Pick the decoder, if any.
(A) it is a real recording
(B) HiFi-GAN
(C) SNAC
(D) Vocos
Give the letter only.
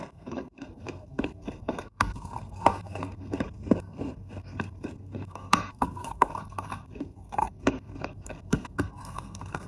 C